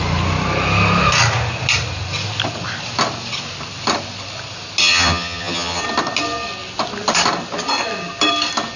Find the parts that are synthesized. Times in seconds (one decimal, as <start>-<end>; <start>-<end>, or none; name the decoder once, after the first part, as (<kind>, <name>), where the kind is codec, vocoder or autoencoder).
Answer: 4.8-5.8 (vocoder, HiFi-GAN)